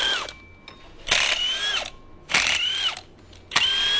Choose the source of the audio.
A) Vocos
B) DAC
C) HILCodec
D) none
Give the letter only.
D